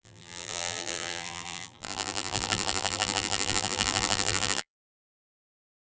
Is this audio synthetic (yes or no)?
yes